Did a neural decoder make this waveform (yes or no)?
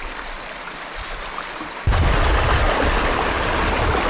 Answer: no